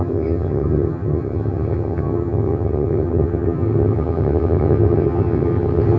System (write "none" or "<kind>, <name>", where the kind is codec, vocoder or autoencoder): vocoder, HiFi-GAN